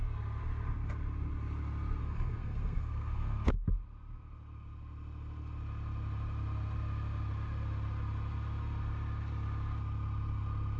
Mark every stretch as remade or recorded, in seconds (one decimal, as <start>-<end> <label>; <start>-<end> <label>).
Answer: 0.0-2.0 recorded; 2.0-3.5 remade; 3.5-10.8 recorded

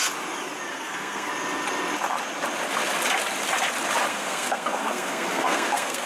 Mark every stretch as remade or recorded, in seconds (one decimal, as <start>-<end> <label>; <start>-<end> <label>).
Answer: 0.0-0.7 recorded; 0.7-1.3 remade; 1.3-4.1 recorded; 4.1-6.1 remade

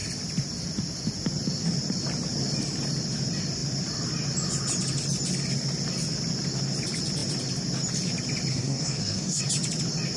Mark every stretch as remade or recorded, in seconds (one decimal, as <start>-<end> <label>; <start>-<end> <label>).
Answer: 0.0-8.5 recorded; 8.5-9.4 remade; 9.4-10.2 recorded

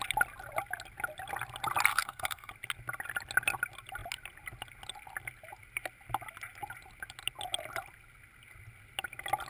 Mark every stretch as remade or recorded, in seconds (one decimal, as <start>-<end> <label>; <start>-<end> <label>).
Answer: 0.0-1.9 recorded; 1.9-2.5 remade; 2.5-9.5 recorded

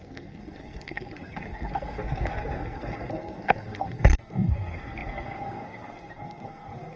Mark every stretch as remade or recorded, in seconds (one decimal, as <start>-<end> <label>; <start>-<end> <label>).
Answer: 0.0-7.0 remade